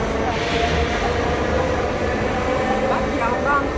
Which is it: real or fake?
real